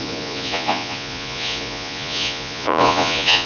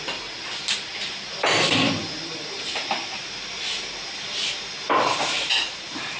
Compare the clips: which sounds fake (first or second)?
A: first